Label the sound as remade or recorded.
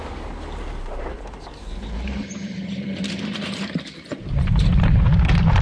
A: remade